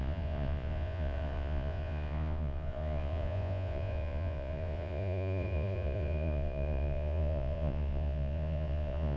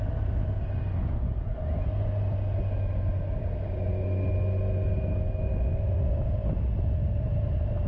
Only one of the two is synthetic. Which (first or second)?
first